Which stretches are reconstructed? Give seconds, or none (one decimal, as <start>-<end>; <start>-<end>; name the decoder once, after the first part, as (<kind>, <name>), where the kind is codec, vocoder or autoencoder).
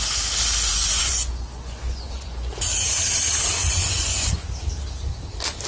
0.7-2.5 (vocoder, Vocos); 3.6-4.4